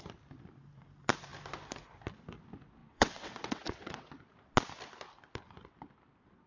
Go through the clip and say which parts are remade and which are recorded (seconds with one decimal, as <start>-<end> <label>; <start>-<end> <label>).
0.0-2.8 recorded; 2.8-4.1 remade; 4.1-6.5 recorded